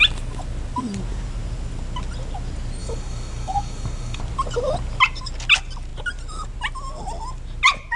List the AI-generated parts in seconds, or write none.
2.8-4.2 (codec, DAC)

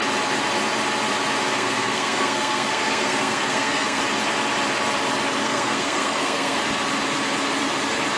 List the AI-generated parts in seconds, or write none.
1.5-4.0 (codec, SNAC); 5.4-6.6

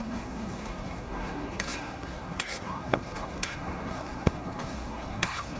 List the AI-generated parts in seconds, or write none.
0.0-5.6 (codec, SNAC)

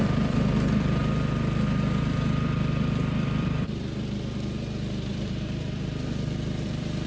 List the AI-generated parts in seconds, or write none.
0.0-1.0 (vocoder, BigVGAN v2); 2.0-3.8; 5.1-7.1

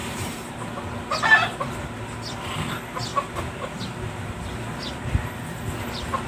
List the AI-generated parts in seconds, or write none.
0.0-0.5 (vocoder, BigVGAN v2); 3.1-3.8